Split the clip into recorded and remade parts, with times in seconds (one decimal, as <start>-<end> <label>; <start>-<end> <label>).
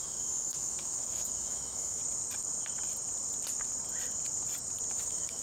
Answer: 0.0-2.0 remade; 2.0-4.9 recorded; 4.9-5.4 remade